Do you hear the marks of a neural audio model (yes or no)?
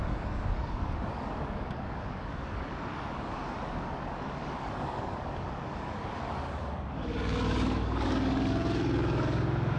yes